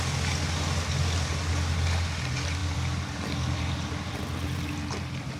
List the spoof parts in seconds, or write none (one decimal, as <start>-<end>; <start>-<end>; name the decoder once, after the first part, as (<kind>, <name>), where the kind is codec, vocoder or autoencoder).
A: 2.6-5.4 (vocoder, BigVGAN v2)

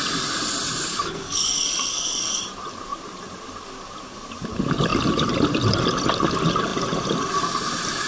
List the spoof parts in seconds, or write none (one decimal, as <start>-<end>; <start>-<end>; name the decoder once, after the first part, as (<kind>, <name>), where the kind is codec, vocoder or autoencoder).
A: 0.9-2.4 (codec, SNAC)